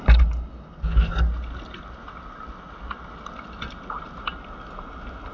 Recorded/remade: recorded